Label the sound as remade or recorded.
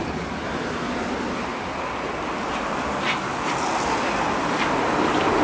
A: recorded